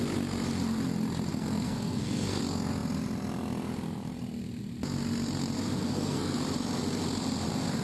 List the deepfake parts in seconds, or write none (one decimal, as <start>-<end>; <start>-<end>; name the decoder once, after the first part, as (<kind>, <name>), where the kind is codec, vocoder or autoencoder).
1.3-2.4 (codec, SNAC); 5.8-6.4